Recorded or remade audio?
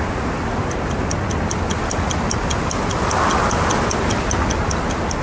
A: recorded